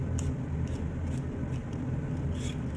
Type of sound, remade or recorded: recorded